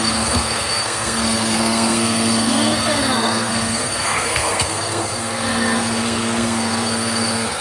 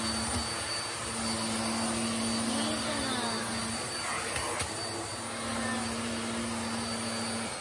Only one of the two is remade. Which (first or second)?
first